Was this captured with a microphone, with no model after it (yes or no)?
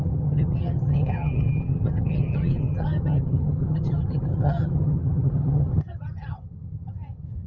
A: no